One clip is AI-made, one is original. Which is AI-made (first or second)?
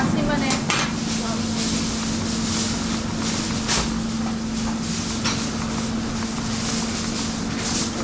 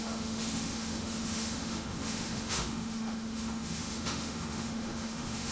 second